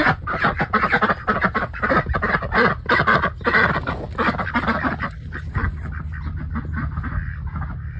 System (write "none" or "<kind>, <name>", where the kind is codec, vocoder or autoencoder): none